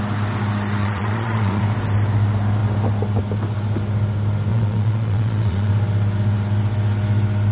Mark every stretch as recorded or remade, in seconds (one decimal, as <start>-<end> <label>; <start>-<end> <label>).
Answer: 0.0-0.8 recorded; 0.8-1.6 remade; 1.6-4.5 recorded; 4.5-5.7 remade; 5.7-7.5 recorded